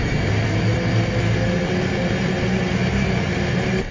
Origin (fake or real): real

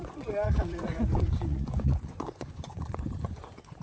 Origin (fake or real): fake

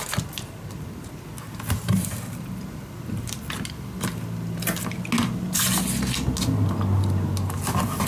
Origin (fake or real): real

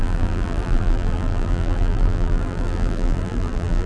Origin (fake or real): fake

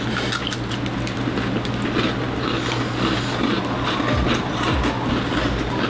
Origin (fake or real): real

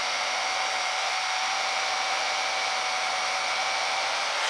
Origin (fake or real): real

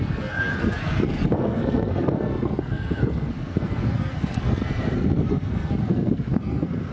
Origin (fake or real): fake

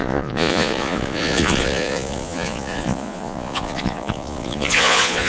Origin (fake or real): fake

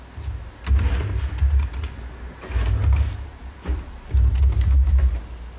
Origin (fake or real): real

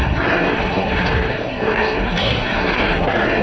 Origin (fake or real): fake